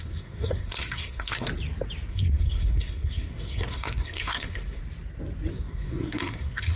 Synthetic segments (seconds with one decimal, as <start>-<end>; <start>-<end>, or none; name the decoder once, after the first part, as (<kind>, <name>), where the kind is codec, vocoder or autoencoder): 0.0-1.5 (codec, SNAC); 2.1-4.8; 5.5-6.8